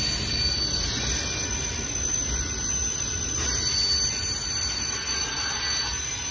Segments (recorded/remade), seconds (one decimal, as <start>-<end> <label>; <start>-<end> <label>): 0.0-6.3 recorded